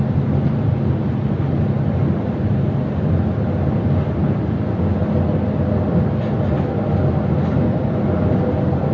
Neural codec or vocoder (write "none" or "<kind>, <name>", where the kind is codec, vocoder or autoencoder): none